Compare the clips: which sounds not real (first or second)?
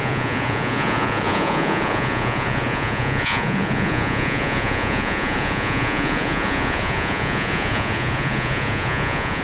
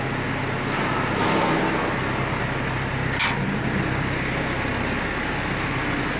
first